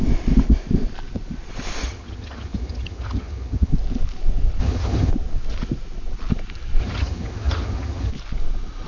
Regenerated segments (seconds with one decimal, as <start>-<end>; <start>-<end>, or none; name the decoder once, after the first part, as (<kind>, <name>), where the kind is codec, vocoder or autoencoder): 1.8-3.7 (vocoder, HiFi-GAN); 4.6-5.1; 6.8-8.1

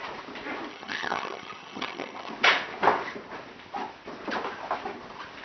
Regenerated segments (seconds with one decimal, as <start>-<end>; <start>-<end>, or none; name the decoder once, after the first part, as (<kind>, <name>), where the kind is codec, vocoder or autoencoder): 0.7-2.3 (vocoder, HiFi-GAN)

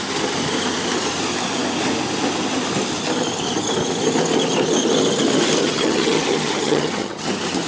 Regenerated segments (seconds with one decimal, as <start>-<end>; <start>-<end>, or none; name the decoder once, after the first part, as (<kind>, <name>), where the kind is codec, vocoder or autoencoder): 5.6-7.3 (vocoder, HiFi-GAN)

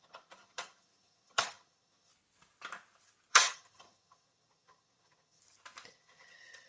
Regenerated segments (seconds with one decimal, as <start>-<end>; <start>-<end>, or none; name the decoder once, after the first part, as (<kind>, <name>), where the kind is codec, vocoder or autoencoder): 0.0-2.1 (vocoder, HiFi-GAN); 3.3-5.4; 5.9-6.7

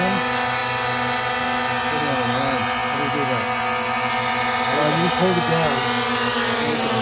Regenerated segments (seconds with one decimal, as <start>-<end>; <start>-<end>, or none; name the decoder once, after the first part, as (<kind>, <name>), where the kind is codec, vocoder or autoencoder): none